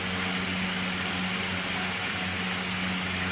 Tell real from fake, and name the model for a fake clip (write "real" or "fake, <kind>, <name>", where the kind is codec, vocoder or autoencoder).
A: real